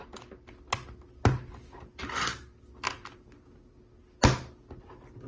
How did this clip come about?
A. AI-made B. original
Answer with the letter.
B